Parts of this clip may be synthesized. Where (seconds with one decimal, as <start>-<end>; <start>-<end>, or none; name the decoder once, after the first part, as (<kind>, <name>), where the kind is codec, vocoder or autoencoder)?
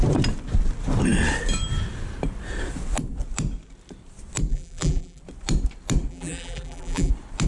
4.5-5.2 (vocoder, BigVGAN v2); 6.1-7.1